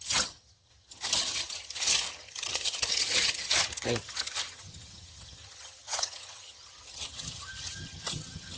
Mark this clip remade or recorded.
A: remade